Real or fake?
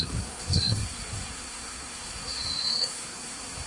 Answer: fake